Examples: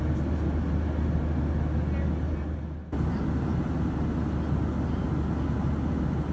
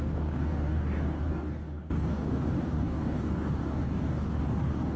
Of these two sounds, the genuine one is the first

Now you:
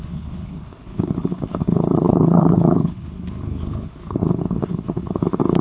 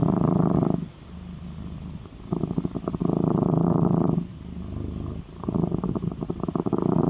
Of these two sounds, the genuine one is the second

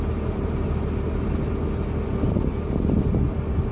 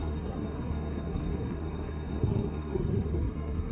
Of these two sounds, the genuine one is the first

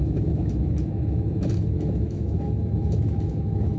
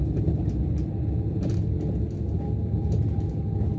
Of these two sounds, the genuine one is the second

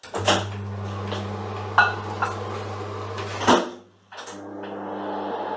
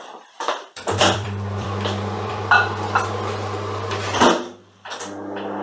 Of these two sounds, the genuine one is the first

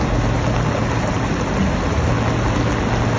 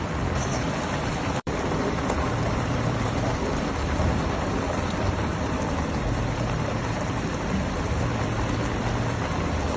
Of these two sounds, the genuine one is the first